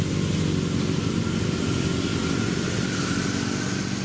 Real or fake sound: real